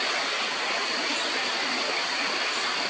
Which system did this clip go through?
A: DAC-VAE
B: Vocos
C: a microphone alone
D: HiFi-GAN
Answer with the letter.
C